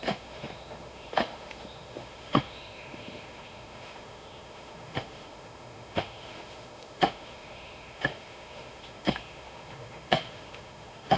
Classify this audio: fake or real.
fake